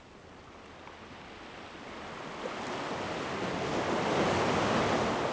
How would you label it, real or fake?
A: real